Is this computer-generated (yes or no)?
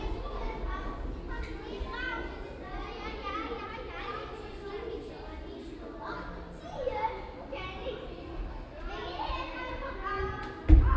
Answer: no